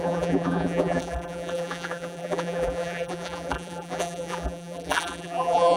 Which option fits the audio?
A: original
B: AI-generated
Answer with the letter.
B